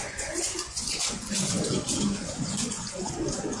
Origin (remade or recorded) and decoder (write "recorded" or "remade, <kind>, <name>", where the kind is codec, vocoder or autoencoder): remade, vocoder, Vocos